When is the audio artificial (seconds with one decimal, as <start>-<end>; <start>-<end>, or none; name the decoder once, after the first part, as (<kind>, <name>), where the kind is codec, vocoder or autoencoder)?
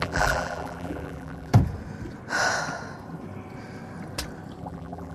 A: 0.0-1.5 (vocoder, BigVGAN v2); 4.6-5.1